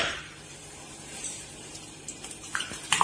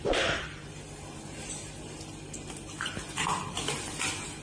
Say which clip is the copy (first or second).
first